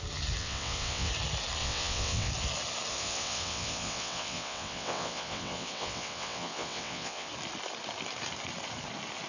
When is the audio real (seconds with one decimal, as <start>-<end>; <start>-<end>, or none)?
0.0-0.4; 1.1-1.6; 2.3-2.9; 7.3-9.3